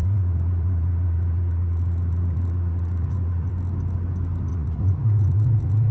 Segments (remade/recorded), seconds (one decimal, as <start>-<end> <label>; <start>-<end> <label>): 0.0-3.5 remade; 3.5-4.5 recorded; 4.5-5.9 remade